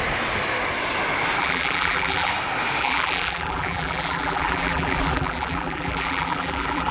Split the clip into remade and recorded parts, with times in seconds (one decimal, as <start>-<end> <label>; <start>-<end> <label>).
0.0-1.4 recorded; 1.4-2.3 remade; 2.3-2.8 recorded; 2.8-6.9 remade